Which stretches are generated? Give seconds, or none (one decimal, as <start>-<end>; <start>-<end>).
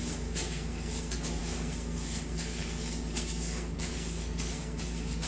0.0-5.3